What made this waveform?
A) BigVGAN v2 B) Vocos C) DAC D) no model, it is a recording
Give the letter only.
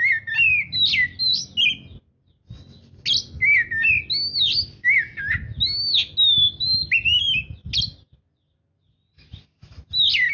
D